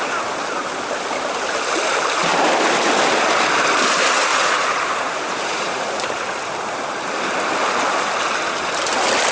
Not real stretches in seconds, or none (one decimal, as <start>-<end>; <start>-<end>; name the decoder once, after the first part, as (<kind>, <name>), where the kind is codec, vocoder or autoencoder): 4.3-6.0 (vocoder, Vocos)

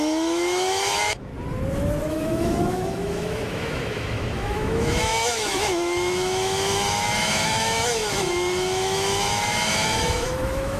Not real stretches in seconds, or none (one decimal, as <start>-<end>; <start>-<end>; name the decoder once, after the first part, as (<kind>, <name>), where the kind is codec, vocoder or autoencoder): 0.0-1.3 (autoencoder, DAC-VAE); 2.1-10.8

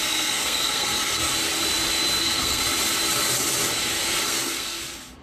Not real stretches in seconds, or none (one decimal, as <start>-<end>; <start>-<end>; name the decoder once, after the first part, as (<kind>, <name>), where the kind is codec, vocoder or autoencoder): 0.0-1.3 (codec, SNAC); 2.2-2.6; 4.2-5.2